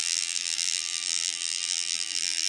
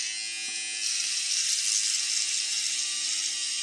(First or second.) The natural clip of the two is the second